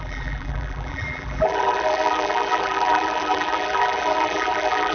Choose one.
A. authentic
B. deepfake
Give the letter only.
B